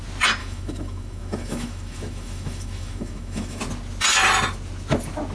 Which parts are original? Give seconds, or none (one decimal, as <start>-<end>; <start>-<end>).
0.0-0.4; 3.6-5.3